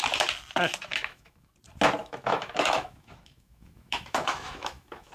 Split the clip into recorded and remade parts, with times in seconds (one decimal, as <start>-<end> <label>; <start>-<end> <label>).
0.0-0.9 recorded; 0.9-1.5 remade; 1.5-2.0 recorded; 2.0-5.1 remade